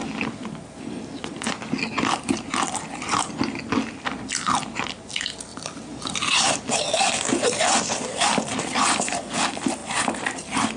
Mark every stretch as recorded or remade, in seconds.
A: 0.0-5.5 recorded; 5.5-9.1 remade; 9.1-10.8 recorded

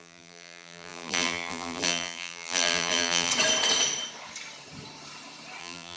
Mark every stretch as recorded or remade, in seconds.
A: 0.0-3.3 remade; 3.3-5.6 recorded; 5.6-6.0 remade

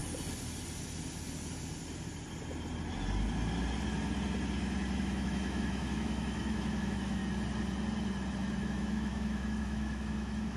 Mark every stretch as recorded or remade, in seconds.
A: 0.0-5.0 recorded; 5.0-7.2 remade; 7.2-8.6 recorded; 8.6-10.6 remade

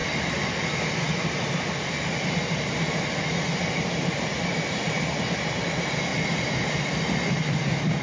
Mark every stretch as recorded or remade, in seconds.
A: 0.0-8.0 recorded

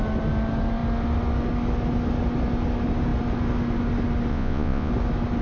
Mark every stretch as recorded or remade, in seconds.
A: 0.0-4.3 recorded; 4.3-4.9 remade; 4.9-5.4 recorded

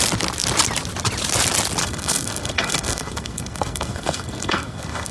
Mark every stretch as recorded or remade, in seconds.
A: 0.0-1.8 recorded; 1.8-5.1 remade

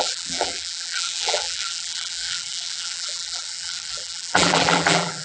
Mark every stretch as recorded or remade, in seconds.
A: 0.0-5.2 remade